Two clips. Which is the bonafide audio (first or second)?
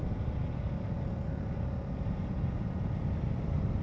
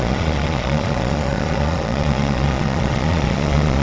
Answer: first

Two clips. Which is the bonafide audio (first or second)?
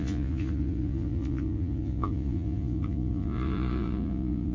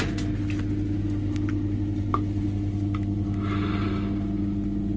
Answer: second